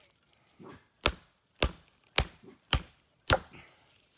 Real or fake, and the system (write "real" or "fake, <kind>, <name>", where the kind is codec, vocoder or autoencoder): real